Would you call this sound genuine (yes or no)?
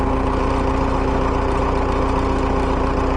yes